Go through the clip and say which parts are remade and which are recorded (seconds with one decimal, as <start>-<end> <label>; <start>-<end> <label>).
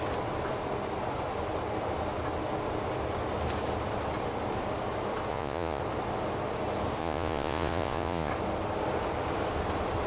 0.0-5.3 recorded; 5.3-5.8 remade; 5.8-7.0 recorded; 7.0-8.3 remade; 8.3-10.1 recorded